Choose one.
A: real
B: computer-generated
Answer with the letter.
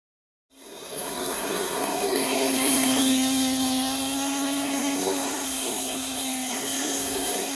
B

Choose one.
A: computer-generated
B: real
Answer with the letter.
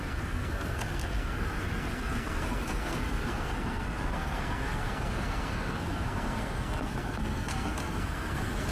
A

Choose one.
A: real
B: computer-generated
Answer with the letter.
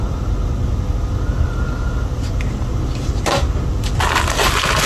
A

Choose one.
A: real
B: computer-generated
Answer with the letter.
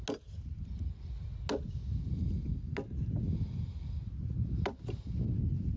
A